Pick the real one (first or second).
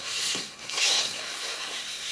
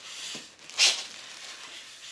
second